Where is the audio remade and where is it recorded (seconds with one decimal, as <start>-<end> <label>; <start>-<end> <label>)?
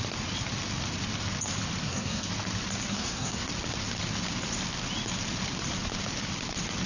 0.0-1.8 recorded; 1.8-2.3 remade; 2.3-2.9 recorded; 2.9-3.5 remade; 3.5-6.9 recorded